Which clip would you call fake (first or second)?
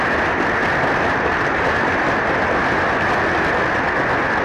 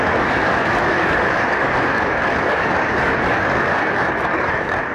second